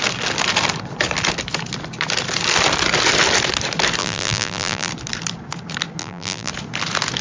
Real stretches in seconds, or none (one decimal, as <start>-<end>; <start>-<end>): 0.0-4.0; 4.9-6.0; 6.5-7.2